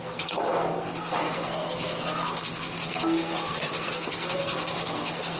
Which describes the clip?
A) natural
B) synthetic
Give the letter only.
B